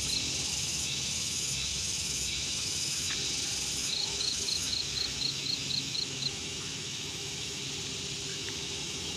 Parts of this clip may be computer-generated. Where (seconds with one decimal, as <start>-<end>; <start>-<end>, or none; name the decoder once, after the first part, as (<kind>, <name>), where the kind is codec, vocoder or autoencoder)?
0.5-3.1 (autoencoder, DAC-VAE); 3.8-7.6; 8.3-9.2